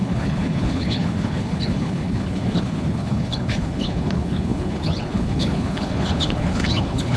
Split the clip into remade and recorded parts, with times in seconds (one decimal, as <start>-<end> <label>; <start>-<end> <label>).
0.0-7.2 remade